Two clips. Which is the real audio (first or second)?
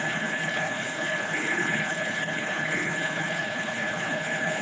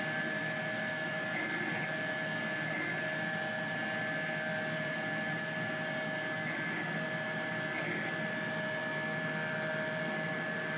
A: second